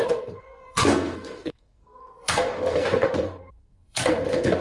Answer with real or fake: fake